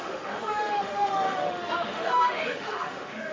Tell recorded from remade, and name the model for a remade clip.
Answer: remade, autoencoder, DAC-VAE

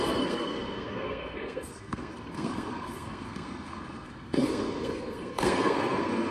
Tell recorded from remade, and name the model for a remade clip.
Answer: remade, codec, SNAC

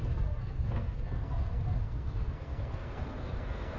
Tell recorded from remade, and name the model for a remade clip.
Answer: remade, codec, SNAC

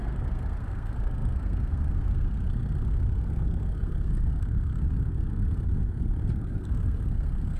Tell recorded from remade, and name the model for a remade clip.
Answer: remade, codec, SNAC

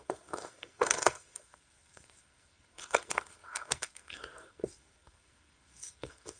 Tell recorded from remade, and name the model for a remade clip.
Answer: remade, codec, SNAC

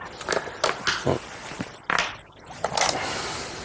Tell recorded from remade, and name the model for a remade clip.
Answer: recorded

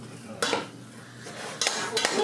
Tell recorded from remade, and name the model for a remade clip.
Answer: recorded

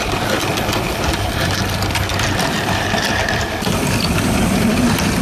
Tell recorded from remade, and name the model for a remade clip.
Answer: remade, vocoder, BigVGAN v2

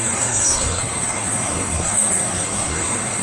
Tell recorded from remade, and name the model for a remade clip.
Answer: remade, codec, SNAC